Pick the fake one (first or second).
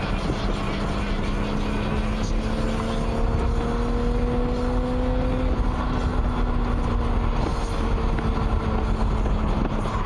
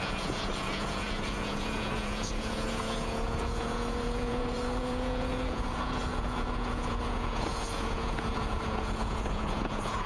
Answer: second